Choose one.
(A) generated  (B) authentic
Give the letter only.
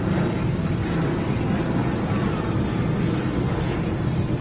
B